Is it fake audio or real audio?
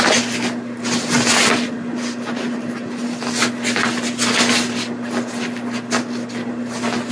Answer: real